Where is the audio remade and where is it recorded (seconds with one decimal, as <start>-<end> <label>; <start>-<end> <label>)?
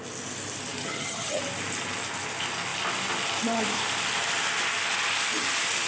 0.0-0.8 recorded; 0.8-1.4 remade; 1.4-5.9 recorded